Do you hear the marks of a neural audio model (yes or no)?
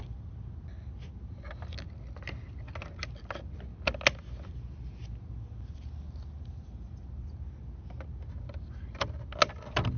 no